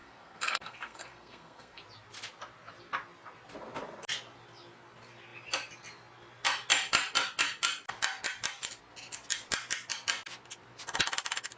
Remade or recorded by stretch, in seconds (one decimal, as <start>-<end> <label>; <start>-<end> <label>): 0.0-1.8 remade; 1.8-11.6 recorded